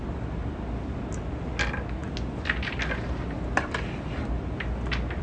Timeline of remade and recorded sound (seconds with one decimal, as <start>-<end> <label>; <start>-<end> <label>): 0.0-5.2 recorded